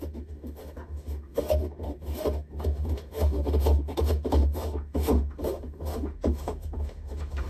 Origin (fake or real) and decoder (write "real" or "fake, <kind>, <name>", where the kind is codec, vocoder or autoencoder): fake, autoencoder, DAC-VAE